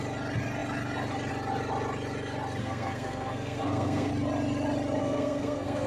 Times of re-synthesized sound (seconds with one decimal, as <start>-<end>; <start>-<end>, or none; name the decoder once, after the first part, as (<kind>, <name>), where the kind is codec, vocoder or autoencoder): 2.6-4.1 (codec, SNAC); 5.0-5.9